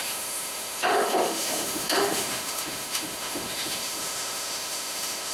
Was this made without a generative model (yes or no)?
no